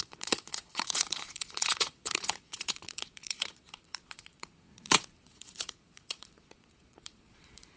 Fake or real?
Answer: fake